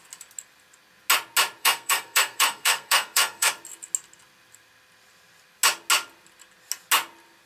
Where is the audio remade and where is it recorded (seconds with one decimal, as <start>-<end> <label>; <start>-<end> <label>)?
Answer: 0.0-1.6 recorded; 1.6-3.5 remade; 3.5-7.5 recorded